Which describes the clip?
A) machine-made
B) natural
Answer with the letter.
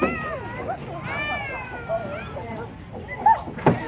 B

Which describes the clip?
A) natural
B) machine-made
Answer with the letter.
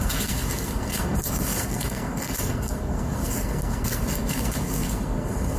B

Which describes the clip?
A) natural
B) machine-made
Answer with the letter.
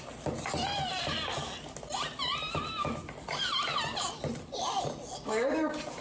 A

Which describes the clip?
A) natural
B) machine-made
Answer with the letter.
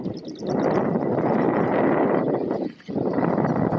A